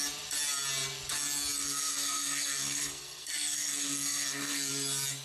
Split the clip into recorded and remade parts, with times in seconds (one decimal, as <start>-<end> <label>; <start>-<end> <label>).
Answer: 0.0-1.6 recorded; 1.6-4.7 remade; 4.7-5.2 recorded